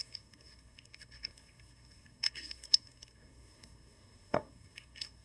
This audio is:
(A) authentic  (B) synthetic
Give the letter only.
B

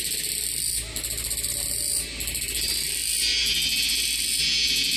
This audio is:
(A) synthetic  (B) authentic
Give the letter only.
B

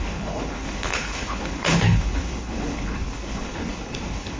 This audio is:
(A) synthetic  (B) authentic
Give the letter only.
A